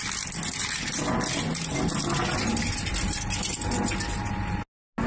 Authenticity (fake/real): real